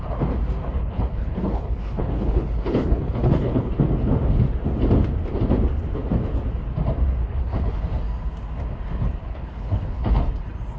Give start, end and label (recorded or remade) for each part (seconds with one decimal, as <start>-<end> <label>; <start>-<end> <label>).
0.0-0.8 recorded; 0.8-3.7 remade; 3.7-7.2 recorded; 7.2-7.8 remade; 7.8-9.2 recorded; 9.2-10.2 remade; 10.2-10.8 recorded